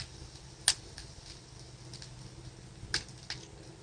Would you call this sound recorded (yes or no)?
yes